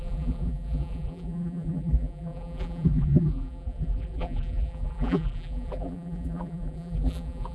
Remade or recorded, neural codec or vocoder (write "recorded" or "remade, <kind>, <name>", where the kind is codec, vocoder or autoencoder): remade, vocoder, BigVGAN v2